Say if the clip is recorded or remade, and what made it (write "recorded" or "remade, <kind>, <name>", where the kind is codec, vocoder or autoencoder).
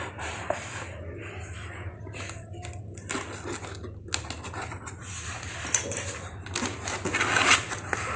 recorded